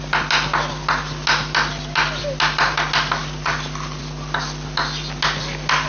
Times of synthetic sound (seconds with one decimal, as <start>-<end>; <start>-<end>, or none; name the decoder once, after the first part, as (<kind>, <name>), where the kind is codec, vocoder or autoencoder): none